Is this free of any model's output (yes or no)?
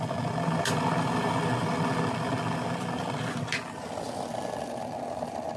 yes